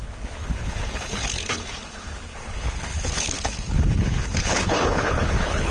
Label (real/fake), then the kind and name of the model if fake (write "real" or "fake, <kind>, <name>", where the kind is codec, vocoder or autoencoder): fake, codec, HILCodec